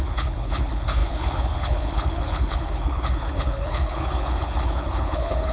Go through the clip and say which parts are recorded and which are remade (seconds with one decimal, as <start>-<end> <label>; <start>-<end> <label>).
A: 0.0-5.5 remade